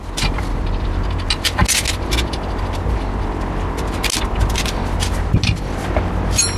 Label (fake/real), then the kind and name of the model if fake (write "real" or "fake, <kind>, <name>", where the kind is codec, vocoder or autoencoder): real